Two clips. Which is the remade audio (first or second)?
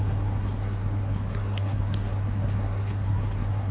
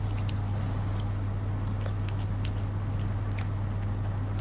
first